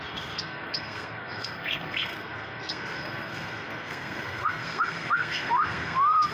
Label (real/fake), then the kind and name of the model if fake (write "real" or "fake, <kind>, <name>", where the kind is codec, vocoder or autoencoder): fake, codec, SNAC